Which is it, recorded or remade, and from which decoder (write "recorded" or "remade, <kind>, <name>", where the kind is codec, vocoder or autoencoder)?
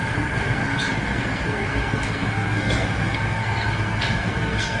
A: remade, codec, SNAC